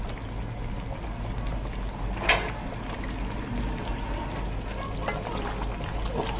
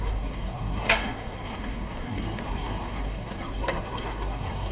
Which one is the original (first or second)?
first